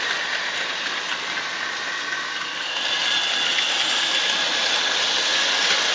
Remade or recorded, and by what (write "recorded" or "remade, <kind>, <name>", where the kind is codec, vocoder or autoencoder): recorded